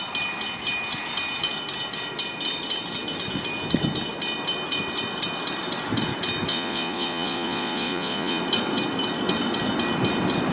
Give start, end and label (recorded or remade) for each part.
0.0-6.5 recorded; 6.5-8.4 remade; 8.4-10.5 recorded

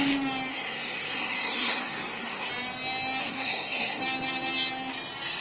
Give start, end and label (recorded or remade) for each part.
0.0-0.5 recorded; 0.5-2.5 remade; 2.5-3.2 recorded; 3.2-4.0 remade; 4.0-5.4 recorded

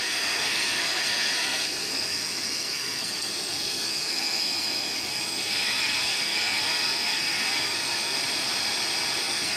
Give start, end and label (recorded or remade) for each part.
0.0-8.2 remade; 8.2-9.2 recorded; 9.2-9.6 remade